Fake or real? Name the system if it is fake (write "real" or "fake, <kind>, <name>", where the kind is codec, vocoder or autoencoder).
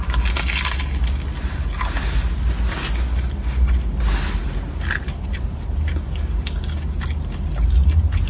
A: real